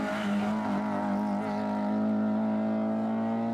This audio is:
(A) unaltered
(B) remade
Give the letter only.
A